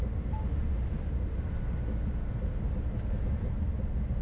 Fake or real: real